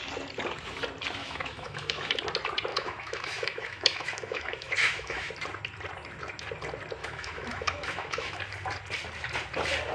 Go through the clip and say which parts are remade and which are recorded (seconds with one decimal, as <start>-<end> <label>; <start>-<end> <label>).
0.0-1.2 recorded; 1.2-2.1 remade; 2.1-2.7 recorded; 2.7-5.3 remade; 5.3-7.0 recorded; 7.0-8.4 remade; 8.4-9.9 recorded